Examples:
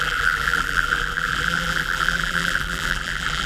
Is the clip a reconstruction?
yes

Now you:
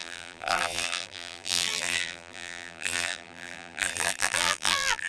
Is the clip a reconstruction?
yes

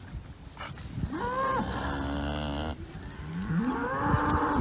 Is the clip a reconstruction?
no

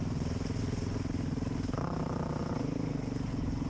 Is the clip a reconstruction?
no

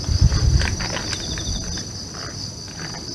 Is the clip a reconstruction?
no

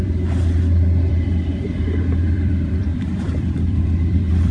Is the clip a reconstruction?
yes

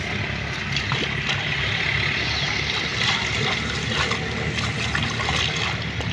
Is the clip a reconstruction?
no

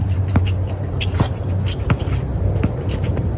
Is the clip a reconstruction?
yes